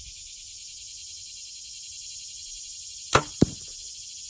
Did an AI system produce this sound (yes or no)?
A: no